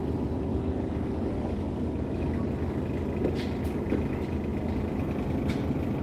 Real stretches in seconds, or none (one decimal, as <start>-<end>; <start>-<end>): 0.0-0.5; 2.4-6.0